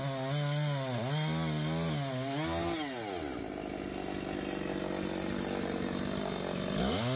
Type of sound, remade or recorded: recorded